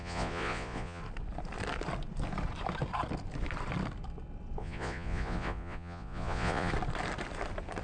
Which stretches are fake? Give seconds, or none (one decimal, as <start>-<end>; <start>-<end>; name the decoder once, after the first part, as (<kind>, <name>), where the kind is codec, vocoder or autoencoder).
0.0-1.0 (vocoder, Vocos); 4.6-6.7